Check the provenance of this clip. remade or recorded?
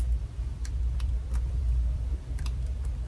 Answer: remade